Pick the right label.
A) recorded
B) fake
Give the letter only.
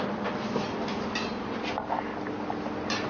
A